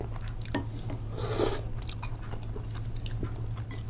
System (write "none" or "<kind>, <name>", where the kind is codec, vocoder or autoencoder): none